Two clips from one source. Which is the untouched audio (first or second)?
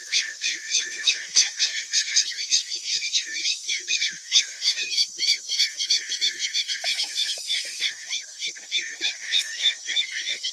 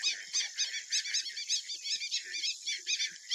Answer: second